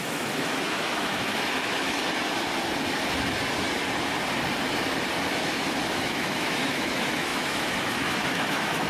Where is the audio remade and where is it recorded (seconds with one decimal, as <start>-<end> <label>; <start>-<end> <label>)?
0.0-2.0 remade; 2.0-5.3 recorded; 5.3-8.9 remade